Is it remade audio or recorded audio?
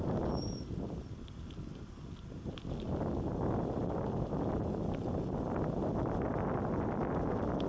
recorded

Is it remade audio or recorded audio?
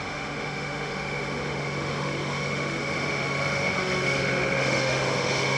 remade